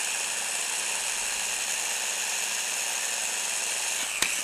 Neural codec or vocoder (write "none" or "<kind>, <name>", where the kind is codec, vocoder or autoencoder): none